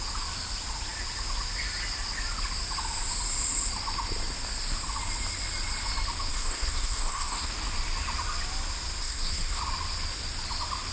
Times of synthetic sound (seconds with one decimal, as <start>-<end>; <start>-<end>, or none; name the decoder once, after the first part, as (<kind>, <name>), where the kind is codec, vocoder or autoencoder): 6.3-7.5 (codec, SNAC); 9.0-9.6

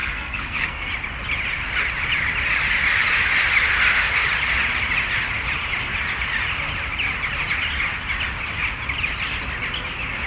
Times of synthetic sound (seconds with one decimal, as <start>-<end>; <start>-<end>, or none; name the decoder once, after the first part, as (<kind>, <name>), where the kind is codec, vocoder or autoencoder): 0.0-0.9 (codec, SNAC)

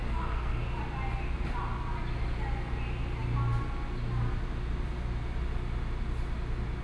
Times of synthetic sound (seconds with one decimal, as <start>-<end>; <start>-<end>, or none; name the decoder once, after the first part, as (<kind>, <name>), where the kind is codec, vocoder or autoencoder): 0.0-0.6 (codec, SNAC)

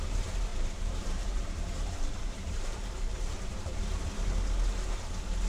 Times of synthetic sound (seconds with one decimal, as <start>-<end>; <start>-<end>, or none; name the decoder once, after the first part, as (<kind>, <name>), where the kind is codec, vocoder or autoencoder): 0.5-3.8 (vocoder, BigVGAN v2)

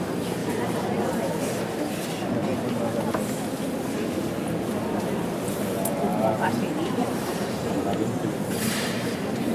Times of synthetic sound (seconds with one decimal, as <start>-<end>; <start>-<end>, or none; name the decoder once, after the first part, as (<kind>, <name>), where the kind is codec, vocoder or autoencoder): 0.4-1.6 (vocoder, BigVGAN v2); 6.1-9.5

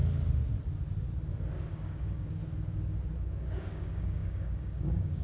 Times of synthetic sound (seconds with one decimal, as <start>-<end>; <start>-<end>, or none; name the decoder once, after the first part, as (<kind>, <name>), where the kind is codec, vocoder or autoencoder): 1.7-2.4 (codec, DAC); 3.2-5.2